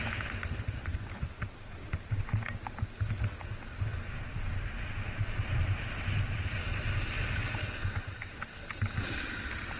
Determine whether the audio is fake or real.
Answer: real